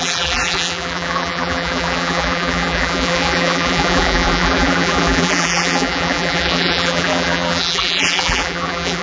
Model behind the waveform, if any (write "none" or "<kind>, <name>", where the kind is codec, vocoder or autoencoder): vocoder, BigVGAN v2